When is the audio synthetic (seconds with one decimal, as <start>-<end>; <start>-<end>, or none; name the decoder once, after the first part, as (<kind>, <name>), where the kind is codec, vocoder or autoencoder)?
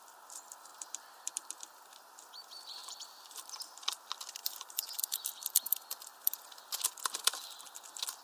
2.8-3.4 (vocoder, BigVGAN v2); 4.4-5.3